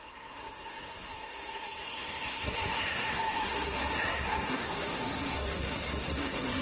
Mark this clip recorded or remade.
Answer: remade